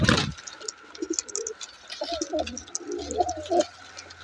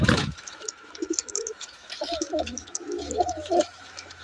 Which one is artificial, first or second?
second